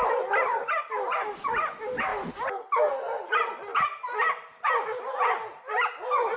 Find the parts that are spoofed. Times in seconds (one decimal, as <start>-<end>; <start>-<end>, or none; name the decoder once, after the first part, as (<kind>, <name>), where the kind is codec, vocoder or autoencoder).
none